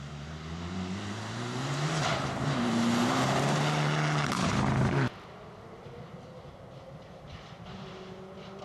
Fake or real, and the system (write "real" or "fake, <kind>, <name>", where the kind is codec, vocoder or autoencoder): real